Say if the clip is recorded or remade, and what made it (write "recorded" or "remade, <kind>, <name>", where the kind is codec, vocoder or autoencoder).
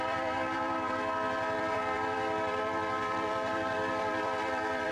remade, vocoder, BigVGAN v2